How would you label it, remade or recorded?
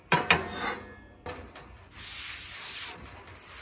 recorded